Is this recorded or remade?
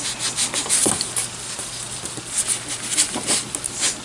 recorded